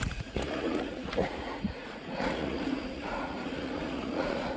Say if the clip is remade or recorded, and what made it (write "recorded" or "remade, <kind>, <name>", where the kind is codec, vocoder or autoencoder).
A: remade, vocoder, Vocos